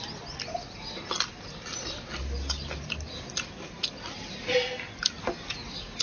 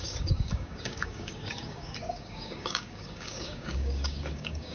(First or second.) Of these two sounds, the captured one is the first